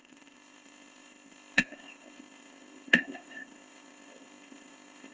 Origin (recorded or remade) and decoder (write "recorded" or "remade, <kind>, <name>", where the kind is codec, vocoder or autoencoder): remade, codec, ZipCodec